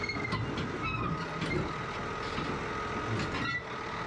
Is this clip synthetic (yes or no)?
no